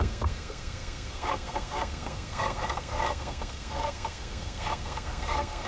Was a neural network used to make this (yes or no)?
yes